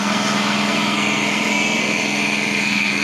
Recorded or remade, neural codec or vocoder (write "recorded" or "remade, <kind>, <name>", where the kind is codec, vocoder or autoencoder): remade, codec, SNAC